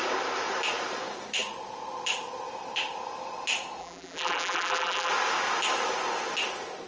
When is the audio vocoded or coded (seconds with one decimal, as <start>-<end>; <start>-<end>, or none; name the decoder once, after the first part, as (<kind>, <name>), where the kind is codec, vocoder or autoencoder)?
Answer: 3.8-5.1 (vocoder, BigVGAN v2)